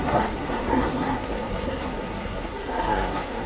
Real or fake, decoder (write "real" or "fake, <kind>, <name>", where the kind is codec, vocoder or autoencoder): fake, codec, SNAC